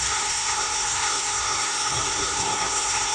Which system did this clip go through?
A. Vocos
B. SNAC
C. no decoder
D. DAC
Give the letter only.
B